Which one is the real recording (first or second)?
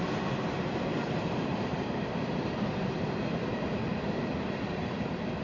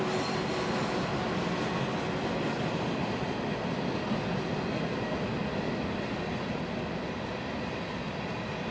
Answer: second